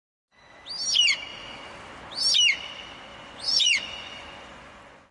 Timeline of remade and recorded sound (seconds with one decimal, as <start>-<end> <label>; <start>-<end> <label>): 0.0-3.1 recorded; 3.1-5.1 remade